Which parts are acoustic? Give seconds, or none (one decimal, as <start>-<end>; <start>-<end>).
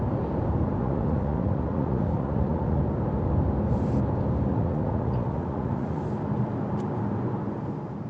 0.0-0.8; 2.8-4.5; 6.0-8.1